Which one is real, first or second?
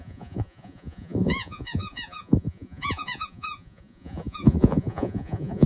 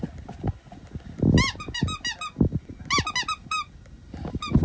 second